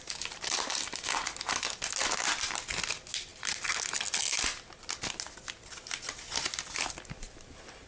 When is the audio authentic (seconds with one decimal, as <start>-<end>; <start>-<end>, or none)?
0.0-7.9